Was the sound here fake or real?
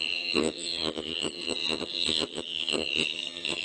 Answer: fake